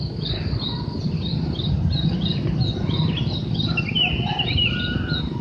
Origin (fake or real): real